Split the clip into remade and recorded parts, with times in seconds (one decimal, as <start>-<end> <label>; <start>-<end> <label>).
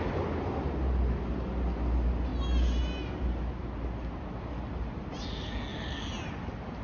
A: 0.0-6.8 recorded